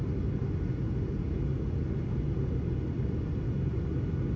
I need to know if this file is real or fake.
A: real